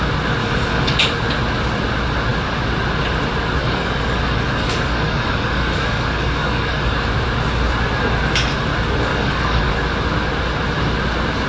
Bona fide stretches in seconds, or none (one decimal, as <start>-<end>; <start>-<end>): 0.0-0.4; 1.0-3.6; 7.1-9.1; 9.7-11.5